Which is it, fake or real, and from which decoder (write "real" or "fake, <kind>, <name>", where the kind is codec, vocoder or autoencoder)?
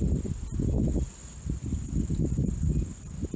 real